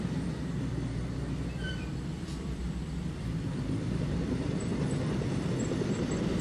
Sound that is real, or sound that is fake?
fake